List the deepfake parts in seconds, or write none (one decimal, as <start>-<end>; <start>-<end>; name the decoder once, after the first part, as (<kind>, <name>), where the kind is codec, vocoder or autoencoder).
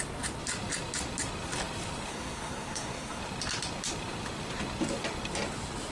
2.1-3.2 (codec, SNAC)